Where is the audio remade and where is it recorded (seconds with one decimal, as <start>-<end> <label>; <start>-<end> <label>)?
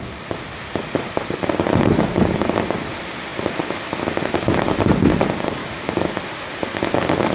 0.0-5.6 recorded; 5.6-6.2 remade; 6.2-7.3 recorded